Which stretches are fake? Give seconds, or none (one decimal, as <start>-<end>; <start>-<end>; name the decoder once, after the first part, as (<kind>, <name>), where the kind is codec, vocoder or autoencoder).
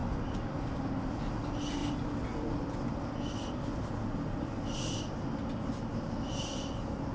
none